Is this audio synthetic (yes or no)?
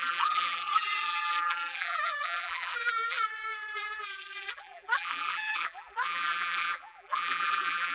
yes